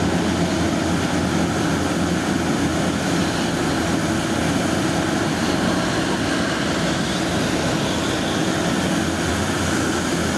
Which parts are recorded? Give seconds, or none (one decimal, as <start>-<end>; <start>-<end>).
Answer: 0.0-10.4